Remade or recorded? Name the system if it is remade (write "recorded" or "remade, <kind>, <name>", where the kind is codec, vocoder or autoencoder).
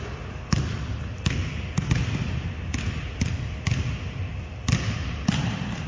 recorded